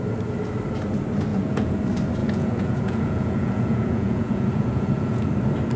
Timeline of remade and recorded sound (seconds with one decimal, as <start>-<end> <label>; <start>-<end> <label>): 0.0-1.3 recorded; 1.3-1.8 remade; 1.8-2.2 recorded; 2.2-5.3 remade; 5.3-5.8 recorded